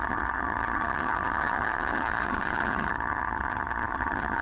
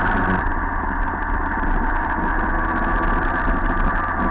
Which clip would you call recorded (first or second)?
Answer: second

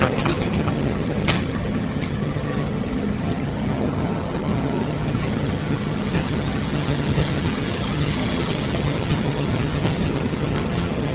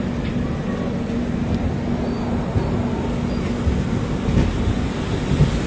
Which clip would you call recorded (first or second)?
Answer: second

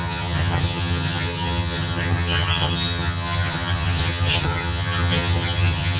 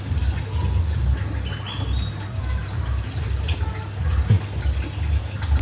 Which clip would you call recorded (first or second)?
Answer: second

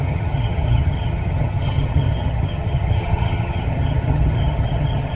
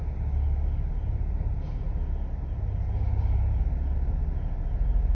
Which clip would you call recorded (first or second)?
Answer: second